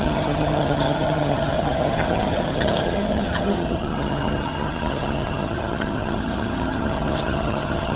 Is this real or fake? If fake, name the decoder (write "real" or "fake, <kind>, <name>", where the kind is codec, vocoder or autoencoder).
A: fake, vocoder, HiFi-GAN